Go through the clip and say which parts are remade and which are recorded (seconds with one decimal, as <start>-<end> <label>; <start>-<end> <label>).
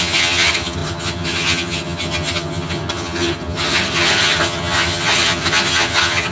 0.0-6.3 remade